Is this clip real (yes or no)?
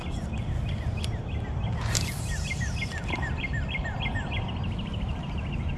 yes